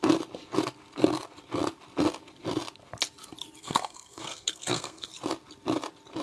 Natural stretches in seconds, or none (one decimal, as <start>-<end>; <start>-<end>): 0.0-3.6; 5.1-6.2